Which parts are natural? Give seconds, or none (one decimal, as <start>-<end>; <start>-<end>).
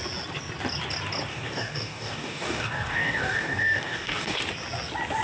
0.0-1.3; 4.4-5.2